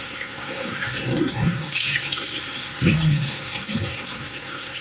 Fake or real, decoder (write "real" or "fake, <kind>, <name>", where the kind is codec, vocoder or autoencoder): fake, codec, SNAC